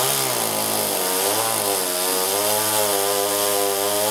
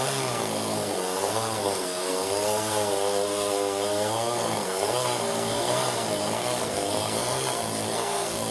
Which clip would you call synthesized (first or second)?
second